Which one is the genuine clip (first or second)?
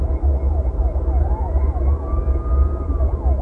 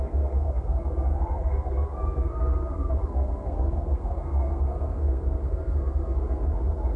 first